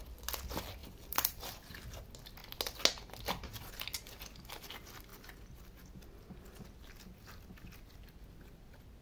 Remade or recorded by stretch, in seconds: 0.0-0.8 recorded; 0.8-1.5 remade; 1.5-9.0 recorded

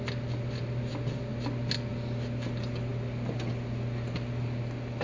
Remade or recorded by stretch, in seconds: 0.0-5.0 recorded

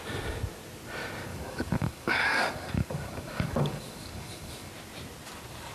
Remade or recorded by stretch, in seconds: 0.0-1.3 recorded; 1.3-4.7 remade; 4.7-5.7 recorded